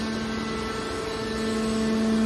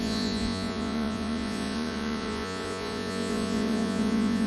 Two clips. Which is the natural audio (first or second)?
first